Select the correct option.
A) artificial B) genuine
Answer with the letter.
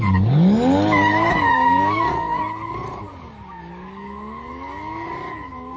A